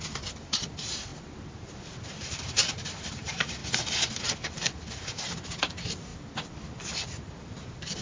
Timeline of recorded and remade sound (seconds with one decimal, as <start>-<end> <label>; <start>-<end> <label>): 0.0-3.6 remade; 3.6-4.2 recorded; 4.2-6.1 remade; 6.1-6.8 recorded; 6.8-8.0 remade